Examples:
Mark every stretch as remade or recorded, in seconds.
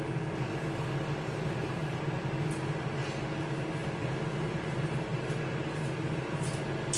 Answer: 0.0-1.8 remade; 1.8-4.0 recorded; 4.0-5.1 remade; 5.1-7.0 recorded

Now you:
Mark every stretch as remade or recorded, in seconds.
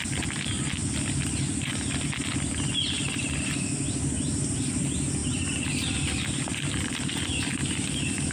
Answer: 0.0-8.3 recorded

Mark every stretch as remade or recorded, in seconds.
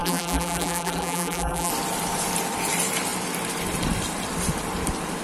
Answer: 0.0-1.7 remade; 1.7-5.2 recorded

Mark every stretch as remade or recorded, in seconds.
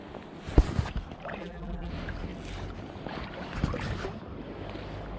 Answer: 0.0-1.4 recorded; 1.4-1.9 remade; 1.9-5.2 recorded